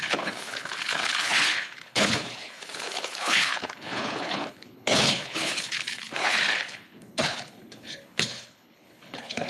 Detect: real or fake fake